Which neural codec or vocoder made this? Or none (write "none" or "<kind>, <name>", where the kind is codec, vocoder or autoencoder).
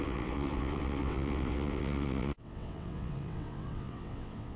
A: vocoder, WaveNeXt